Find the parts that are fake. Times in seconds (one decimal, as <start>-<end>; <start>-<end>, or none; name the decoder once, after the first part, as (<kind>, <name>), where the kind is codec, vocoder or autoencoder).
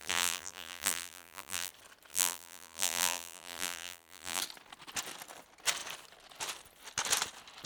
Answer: 0.0-1.7 (vocoder, BigVGAN v2); 2.1-4.4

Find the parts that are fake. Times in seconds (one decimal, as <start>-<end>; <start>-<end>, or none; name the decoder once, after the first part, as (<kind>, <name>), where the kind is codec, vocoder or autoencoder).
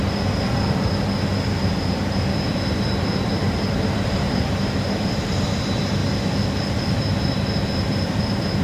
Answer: 1.6-6.0 (vocoder, BigVGAN v2); 7.0-8.6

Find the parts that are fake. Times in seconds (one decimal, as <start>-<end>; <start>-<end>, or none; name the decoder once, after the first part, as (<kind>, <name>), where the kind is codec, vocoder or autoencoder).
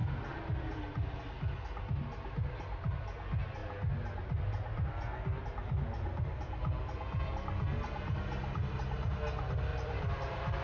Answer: 0.0-1.3 (vocoder, BigVGAN v2); 9.7-10.2